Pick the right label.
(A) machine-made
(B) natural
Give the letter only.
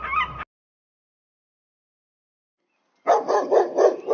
B